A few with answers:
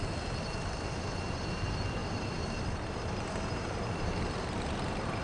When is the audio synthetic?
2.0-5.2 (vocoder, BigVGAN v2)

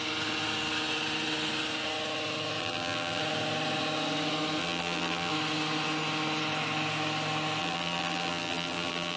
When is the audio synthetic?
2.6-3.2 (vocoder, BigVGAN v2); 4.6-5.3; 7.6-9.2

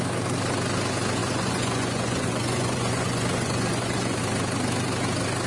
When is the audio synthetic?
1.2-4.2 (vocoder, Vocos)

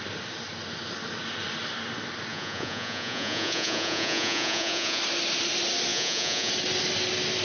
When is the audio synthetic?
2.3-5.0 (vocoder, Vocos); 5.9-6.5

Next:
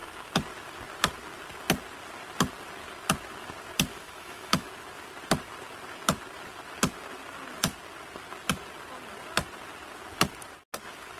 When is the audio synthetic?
3.9-4.7 (autoencoder, DAC-VAE)